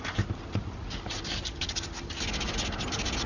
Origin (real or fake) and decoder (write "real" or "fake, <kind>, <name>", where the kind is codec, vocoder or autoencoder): real